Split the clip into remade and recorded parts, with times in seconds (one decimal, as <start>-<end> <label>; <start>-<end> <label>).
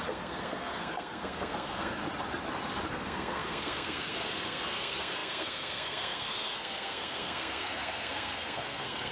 0.0-2.0 remade; 2.0-2.9 recorded; 2.9-9.1 remade